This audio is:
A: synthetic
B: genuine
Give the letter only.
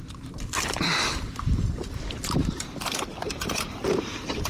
A